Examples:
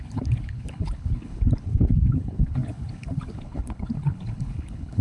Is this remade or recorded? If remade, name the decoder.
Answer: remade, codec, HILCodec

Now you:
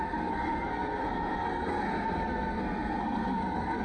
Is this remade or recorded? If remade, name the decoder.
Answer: remade, codec, SNAC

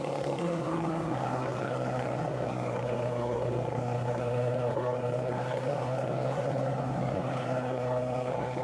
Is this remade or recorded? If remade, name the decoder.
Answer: remade, codec, SNAC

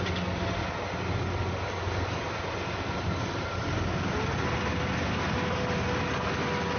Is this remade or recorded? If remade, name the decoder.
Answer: recorded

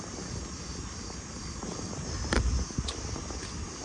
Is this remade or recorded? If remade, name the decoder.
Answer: recorded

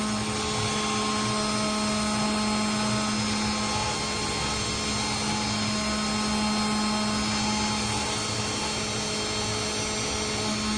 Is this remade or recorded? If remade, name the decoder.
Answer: recorded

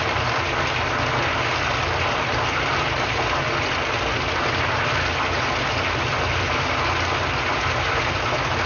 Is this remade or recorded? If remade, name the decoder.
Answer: recorded